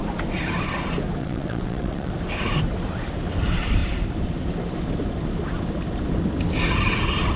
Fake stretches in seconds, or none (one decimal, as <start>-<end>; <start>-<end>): 1.2-2.1